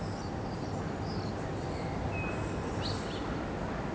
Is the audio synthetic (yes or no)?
no